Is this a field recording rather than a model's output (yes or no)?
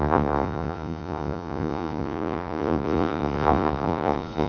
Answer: no